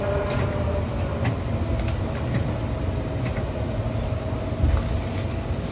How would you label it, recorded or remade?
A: recorded